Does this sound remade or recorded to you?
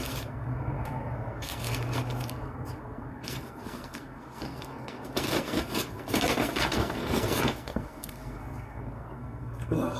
remade